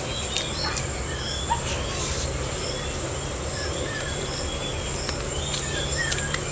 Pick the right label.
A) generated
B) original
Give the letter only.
B